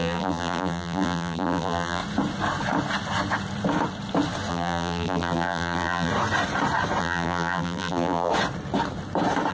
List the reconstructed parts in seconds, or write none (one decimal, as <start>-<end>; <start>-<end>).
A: 0.0-2.0; 4.5-6.1; 7.0-8.3